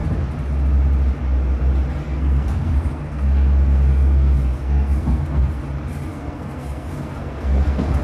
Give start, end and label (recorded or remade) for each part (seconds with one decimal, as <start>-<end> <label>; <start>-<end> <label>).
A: 0.0-2.0 recorded; 2.0-5.6 remade; 5.6-6.1 recorded; 6.1-8.0 remade